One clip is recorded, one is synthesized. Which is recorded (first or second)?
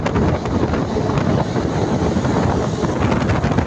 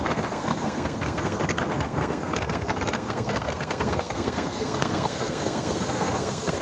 first